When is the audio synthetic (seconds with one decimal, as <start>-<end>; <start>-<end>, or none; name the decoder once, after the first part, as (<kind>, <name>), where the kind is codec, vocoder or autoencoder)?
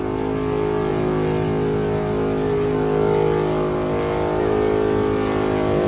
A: none